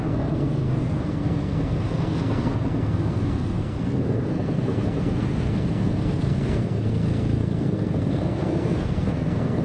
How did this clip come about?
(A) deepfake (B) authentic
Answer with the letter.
A